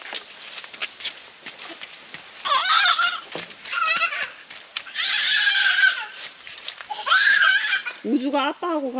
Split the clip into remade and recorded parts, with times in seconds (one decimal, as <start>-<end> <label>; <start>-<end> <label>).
0.0-0.8 recorded; 0.8-2.0 remade; 2.0-4.7 recorded; 4.7-7.7 remade; 7.7-9.0 recorded